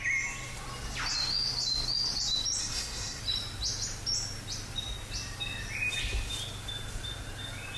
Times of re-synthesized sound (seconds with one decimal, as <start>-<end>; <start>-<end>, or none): 2.6-3.2